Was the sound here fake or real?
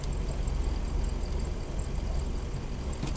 real